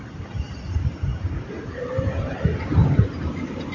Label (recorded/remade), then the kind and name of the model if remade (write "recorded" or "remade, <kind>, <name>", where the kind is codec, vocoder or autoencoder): remade, vocoder, BigVGAN v2